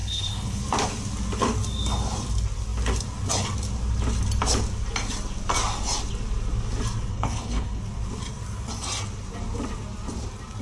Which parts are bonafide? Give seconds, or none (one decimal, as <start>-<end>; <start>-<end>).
0.6-7.1; 7.8-10.6